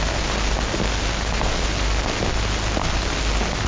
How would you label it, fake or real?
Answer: real